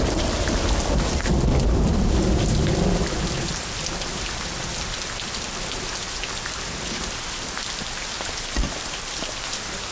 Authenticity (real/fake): real